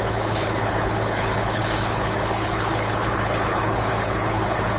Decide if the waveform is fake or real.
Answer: fake